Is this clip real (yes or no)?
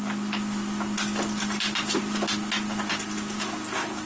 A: yes